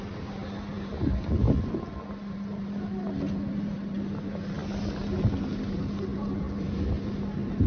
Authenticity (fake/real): real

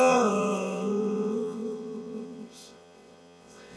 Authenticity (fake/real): fake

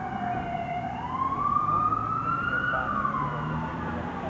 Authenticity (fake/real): real